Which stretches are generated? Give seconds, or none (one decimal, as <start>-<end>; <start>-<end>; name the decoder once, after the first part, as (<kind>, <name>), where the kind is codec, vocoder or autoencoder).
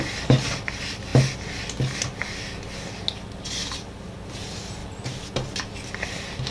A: none